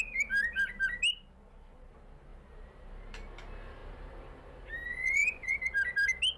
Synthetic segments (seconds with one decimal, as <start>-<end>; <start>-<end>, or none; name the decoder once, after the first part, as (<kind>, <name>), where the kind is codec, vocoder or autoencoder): 4.9-5.6 (vocoder, Vocos)